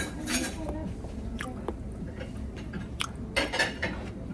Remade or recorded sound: recorded